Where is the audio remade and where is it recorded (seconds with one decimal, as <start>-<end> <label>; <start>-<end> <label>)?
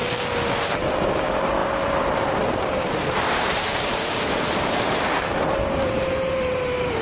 0.0-0.7 recorded; 0.7-7.0 remade